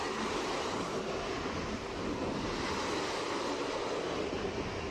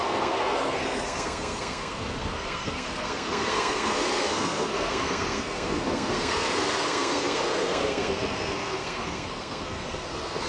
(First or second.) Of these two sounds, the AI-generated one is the second